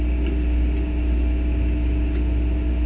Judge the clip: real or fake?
real